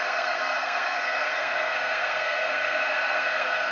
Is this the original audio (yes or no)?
no